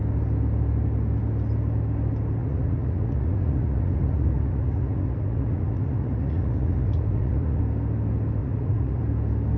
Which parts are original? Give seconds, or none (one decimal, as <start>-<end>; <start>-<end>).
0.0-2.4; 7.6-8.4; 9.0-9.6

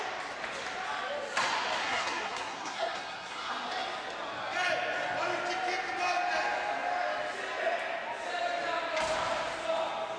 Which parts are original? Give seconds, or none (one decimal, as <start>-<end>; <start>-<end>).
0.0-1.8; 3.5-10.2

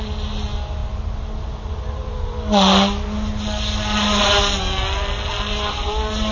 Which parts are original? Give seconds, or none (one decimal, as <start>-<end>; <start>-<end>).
0.0-5.5

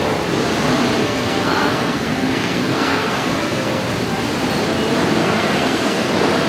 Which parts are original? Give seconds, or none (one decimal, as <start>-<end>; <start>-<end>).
0.0-1.0; 3.8-5.2; 6.1-6.5

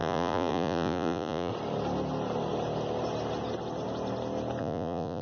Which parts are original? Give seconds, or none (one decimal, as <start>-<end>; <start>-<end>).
1.5-4.6